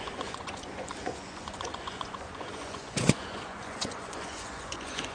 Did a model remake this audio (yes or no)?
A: yes